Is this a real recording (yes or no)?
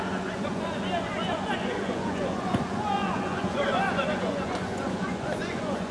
no